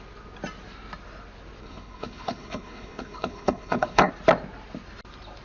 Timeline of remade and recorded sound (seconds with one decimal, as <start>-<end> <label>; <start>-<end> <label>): 0.0-1.6 recorded; 1.6-4.1 remade; 4.1-5.4 recorded